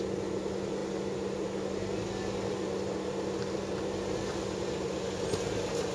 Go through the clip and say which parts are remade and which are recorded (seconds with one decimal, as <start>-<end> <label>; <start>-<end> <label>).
0.0-5.9 recorded